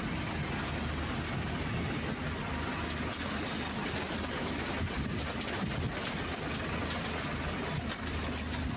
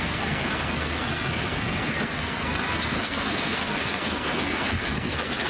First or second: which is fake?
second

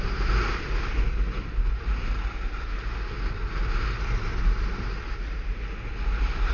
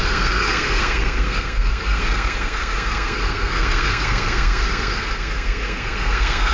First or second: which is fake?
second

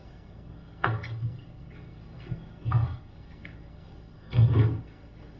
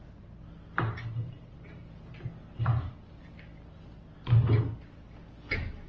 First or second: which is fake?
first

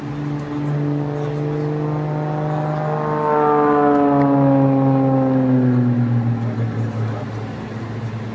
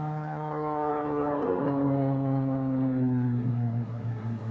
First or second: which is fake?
second